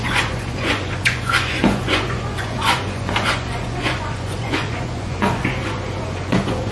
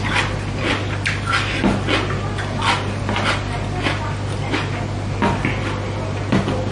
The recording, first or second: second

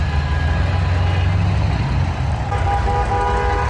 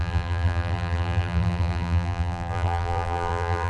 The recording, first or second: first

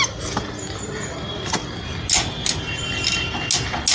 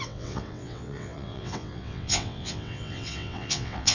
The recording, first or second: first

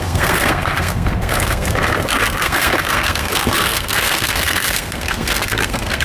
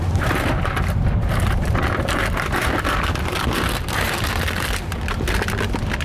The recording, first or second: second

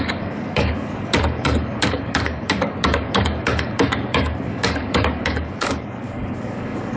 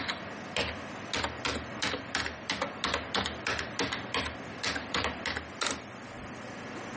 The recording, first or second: second